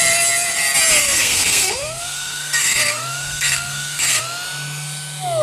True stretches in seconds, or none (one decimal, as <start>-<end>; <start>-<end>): 0.0-1.0; 4.2-5.4